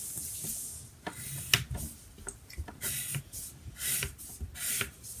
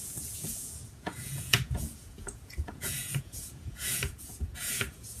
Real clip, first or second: first